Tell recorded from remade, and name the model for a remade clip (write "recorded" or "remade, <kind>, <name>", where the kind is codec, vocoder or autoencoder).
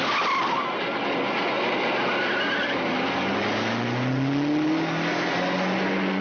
recorded